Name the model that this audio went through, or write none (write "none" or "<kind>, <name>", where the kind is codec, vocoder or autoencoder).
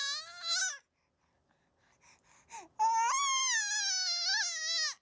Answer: none